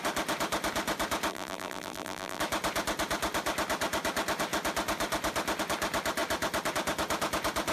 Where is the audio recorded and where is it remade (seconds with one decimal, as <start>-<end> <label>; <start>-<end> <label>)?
0.0-1.3 recorded; 1.3-2.4 remade; 2.4-7.7 recorded